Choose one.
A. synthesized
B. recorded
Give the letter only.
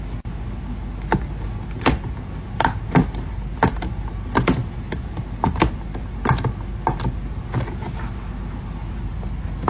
B